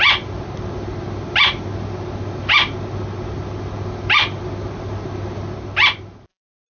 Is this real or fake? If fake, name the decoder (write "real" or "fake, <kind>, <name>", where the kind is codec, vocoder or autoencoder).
real